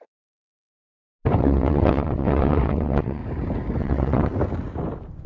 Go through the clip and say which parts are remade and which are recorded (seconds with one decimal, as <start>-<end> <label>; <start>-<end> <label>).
0.0-0.7 remade; 0.7-1.4 recorded; 1.4-3.2 remade; 3.2-3.8 recorded; 3.8-4.3 remade; 4.3-5.3 recorded